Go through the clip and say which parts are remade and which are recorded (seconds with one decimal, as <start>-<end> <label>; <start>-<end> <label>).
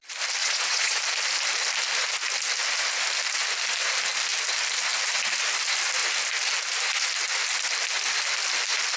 0.0-0.4 recorded; 0.4-1.0 remade; 1.0-9.0 recorded